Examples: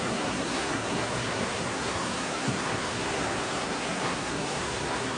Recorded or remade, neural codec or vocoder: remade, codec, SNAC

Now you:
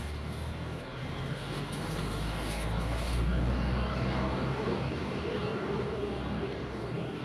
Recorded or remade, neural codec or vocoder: remade, codec, DAC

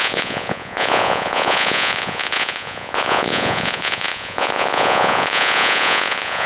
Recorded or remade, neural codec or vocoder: remade, vocoder, Vocos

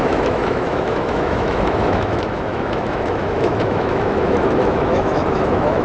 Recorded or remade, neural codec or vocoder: remade, autoencoder, DAC-VAE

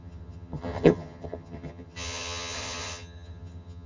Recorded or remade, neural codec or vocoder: remade, vocoder, HiFi-GAN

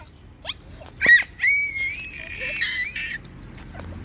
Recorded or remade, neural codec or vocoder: recorded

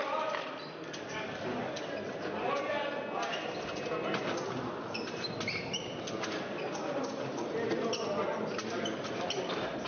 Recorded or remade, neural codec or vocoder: recorded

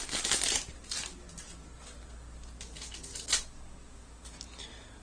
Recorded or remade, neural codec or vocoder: recorded